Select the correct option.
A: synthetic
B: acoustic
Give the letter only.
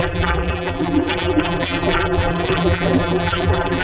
A